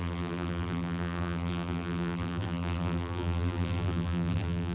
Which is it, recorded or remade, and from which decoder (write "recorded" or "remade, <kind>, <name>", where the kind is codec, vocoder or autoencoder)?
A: remade, vocoder, BigVGAN v2